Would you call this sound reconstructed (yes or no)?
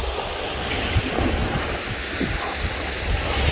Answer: no